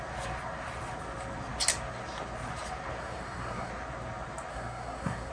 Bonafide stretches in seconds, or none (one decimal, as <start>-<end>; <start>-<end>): 0.0-3.0; 3.7-4.5